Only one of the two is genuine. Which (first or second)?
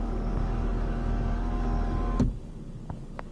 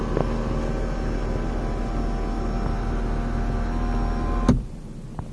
second